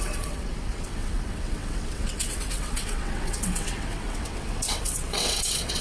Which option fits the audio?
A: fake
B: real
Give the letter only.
A